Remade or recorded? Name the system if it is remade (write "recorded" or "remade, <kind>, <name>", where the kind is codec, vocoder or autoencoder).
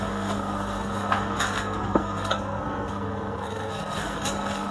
remade, codec, SNAC